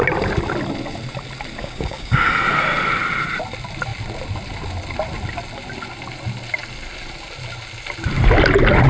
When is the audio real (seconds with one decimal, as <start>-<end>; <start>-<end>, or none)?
0.0-1.6; 2.3-8.9